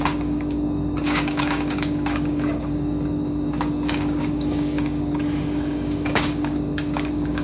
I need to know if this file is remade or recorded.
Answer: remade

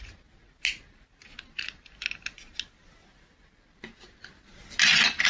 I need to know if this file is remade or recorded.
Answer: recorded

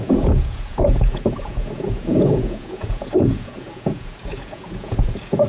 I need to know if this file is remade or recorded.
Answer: remade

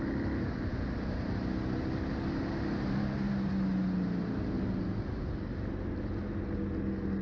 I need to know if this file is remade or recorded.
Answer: recorded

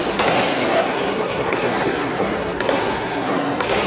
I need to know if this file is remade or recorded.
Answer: remade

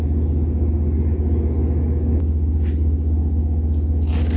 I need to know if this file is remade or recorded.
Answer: recorded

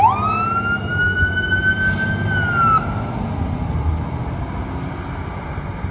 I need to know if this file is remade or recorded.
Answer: recorded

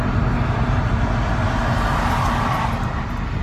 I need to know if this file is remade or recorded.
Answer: recorded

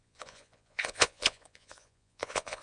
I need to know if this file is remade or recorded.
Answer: remade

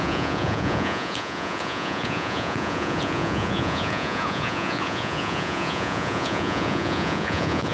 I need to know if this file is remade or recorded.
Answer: remade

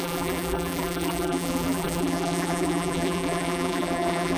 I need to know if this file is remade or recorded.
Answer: remade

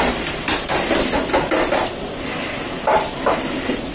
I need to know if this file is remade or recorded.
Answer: recorded